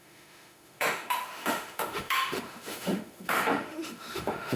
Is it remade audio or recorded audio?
remade